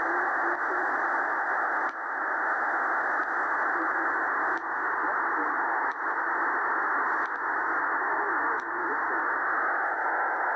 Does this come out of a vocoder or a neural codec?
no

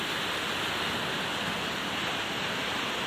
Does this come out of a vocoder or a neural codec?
no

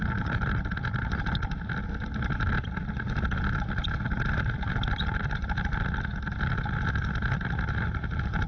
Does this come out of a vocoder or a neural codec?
no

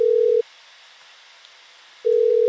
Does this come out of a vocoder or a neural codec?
no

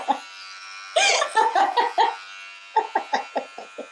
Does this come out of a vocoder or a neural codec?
no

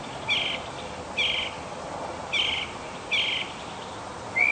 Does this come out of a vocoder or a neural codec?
no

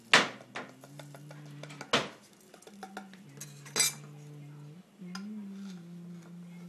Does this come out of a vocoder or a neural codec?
no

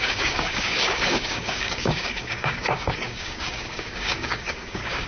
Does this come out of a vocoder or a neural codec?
yes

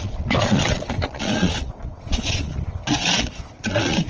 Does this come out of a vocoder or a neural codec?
yes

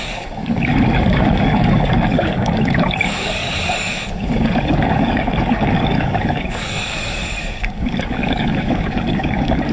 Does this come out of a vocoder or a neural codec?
yes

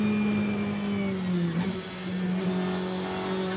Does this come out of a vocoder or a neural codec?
no